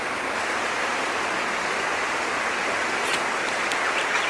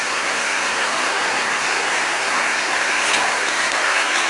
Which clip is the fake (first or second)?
second